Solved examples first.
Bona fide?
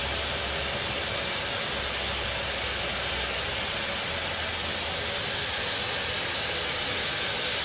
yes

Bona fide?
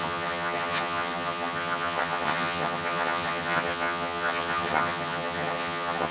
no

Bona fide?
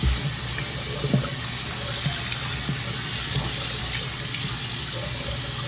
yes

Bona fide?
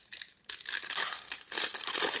yes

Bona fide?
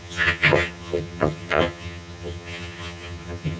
no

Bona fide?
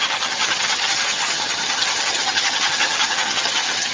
no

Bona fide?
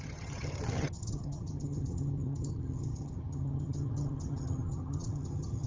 no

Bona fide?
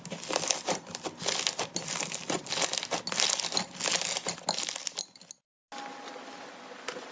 yes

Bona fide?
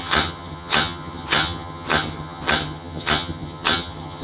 no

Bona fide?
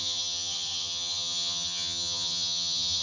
no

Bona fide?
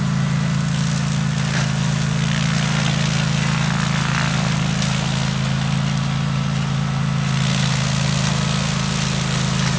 yes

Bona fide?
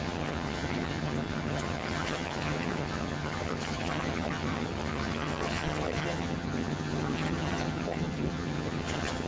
no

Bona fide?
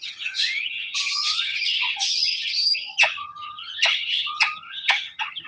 no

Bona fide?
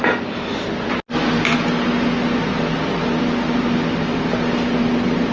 yes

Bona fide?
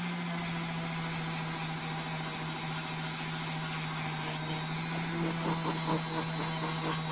yes